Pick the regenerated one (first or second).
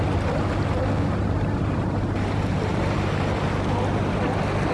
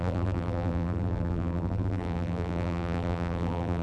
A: second